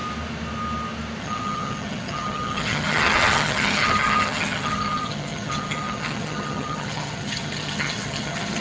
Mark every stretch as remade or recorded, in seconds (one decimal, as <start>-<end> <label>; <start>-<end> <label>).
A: 0.0-1.2 recorded; 1.2-8.6 remade